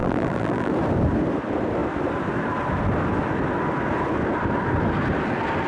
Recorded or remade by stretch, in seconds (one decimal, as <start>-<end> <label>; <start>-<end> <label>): 0.0-0.7 remade; 0.7-5.7 recorded